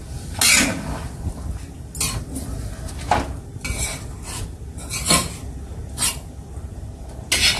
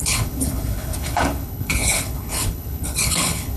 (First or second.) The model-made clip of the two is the second